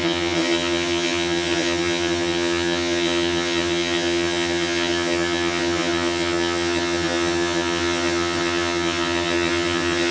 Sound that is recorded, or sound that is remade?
remade